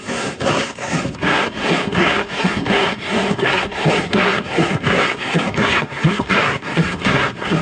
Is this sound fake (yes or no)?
yes